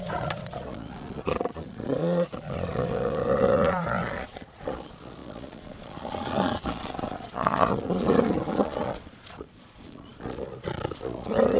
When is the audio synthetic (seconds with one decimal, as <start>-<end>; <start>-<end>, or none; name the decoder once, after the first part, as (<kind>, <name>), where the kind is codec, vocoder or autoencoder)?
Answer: 0.0-11.6 (vocoder, Vocos)